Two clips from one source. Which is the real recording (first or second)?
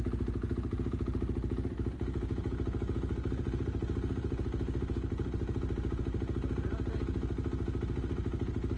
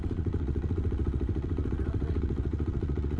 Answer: first